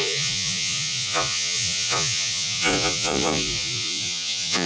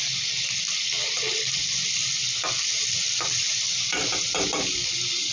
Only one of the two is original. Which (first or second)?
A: second